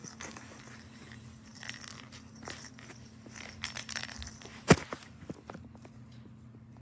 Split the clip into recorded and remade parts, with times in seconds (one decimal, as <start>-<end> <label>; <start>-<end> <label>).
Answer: 0.0-0.6 remade; 0.6-6.8 recorded